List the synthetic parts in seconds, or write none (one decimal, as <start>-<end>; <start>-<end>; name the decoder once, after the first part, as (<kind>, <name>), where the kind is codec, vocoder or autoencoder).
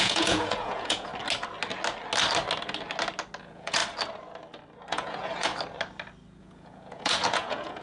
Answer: 0.0-1.1 (vocoder, Vocos); 3.4-3.8; 4.9-5.5; 6.4-7.8